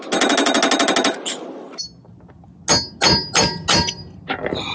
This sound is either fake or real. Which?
real